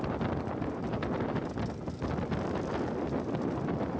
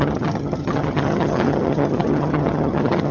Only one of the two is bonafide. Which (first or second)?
first